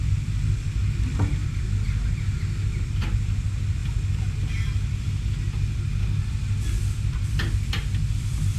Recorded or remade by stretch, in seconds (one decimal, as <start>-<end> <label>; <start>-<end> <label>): 0.0-8.6 recorded